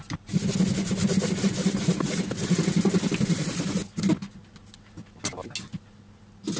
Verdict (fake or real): real